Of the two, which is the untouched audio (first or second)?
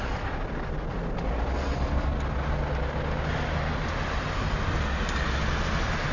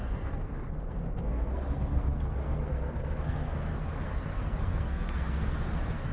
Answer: first